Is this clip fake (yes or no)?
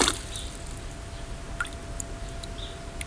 no